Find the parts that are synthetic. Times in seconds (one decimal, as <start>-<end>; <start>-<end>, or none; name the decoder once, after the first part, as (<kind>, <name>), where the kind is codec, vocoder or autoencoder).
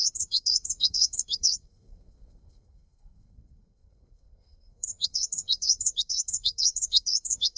0.0-7.6 (codec, SNAC)